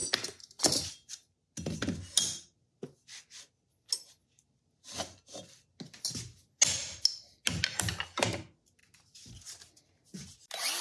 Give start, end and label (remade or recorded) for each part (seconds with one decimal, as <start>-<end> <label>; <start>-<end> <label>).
0.0-10.8 recorded